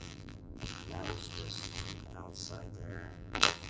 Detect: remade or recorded remade